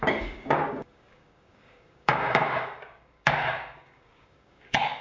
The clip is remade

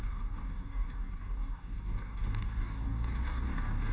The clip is remade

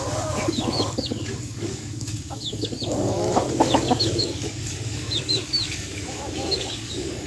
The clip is remade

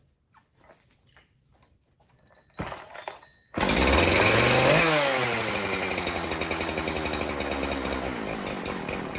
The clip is recorded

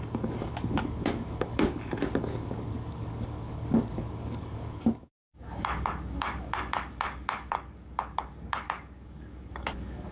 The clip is remade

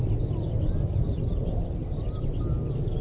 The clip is recorded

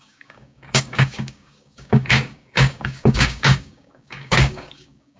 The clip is remade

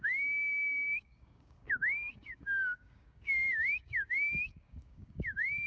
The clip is remade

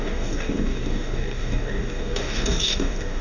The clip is remade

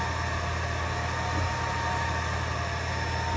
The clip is recorded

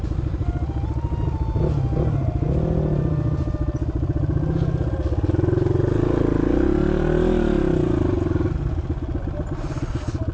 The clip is recorded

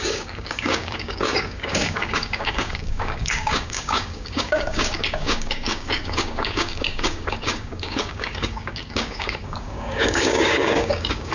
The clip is remade